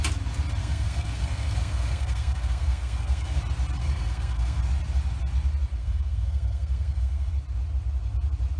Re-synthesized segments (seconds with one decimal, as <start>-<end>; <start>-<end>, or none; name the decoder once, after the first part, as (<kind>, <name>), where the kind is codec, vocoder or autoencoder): 0.6-3.4 (codec, SNAC); 3.8-4.6; 5.8-7.3